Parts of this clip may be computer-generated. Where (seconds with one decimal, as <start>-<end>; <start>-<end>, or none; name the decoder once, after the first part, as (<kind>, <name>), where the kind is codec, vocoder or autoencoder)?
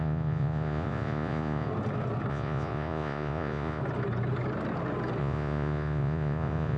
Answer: 0.0-1.7 (vocoder, Vocos); 2.3-3.8; 5.2-6.8